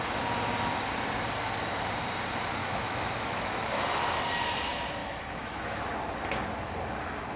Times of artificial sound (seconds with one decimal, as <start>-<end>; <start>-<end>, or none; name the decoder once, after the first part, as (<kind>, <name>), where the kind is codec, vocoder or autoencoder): 2.6-3.8 (autoencoder, DAC-VAE); 5.0-5.8

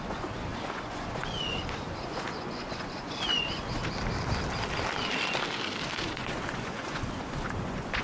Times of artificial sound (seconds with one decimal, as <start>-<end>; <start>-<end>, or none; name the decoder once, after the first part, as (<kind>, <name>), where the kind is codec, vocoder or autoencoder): 0.0-3.8 (vocoder, Vocos); 6.0-8.0

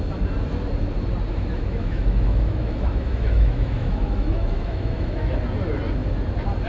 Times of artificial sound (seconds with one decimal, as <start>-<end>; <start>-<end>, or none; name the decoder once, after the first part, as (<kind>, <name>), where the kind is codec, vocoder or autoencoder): 1.3-5.3 (autoencoder, DAC-VAE)

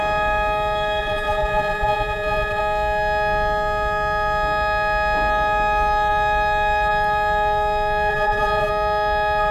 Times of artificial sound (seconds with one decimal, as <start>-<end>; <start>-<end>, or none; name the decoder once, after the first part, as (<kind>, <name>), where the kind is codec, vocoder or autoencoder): 1.0-2.6 (vocoder, Vocos); 8.1-8.7

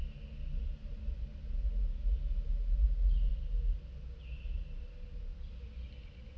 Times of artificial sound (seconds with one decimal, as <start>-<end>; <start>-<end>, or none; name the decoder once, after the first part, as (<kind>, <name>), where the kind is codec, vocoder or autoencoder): none

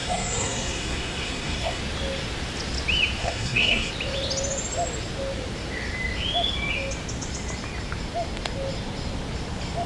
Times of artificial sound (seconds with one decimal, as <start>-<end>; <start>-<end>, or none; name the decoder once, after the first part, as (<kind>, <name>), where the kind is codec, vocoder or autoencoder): 0.0-1.8 (codec, SNAC); 3.2-3.9

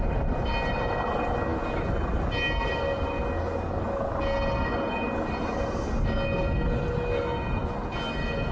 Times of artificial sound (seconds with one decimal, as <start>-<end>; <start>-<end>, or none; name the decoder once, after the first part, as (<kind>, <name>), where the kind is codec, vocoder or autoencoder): none